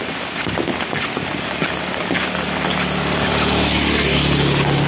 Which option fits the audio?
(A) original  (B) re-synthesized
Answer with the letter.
A